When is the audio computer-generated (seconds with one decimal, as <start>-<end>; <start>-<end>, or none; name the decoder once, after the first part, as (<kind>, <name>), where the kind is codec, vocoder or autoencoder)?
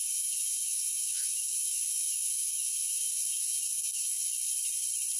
0.0-4.3 (autoencoder, DAC-VAE)